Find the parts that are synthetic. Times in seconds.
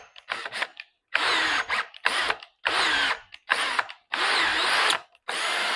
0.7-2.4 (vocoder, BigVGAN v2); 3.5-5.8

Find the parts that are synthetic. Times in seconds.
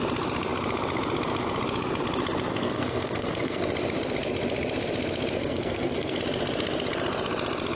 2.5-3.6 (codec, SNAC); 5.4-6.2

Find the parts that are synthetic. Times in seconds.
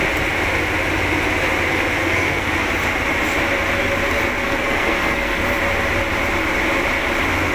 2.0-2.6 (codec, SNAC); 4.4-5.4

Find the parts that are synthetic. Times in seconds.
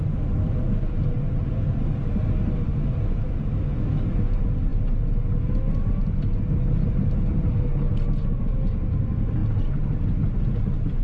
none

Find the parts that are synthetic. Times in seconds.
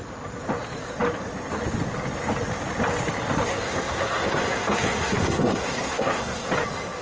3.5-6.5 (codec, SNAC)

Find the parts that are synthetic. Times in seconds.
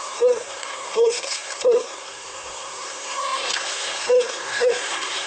0.0-5.3 (codec, SNAC)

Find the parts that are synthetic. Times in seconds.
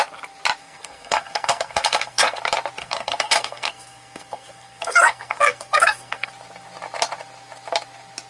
0.6-2.4 (codec, SNAC); 2.8-6.3